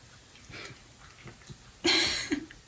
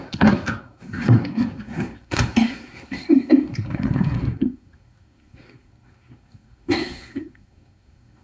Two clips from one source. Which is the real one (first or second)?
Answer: first